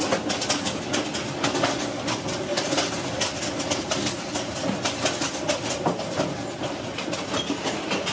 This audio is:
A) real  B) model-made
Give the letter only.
A